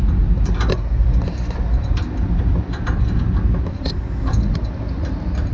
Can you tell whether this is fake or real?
real